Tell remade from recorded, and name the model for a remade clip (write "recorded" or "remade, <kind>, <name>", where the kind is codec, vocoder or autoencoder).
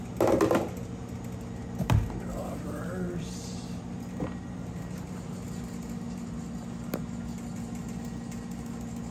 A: recorded